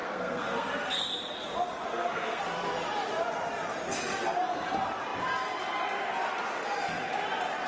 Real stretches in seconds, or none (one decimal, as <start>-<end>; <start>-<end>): 1.1-1.9; 2.4-7.7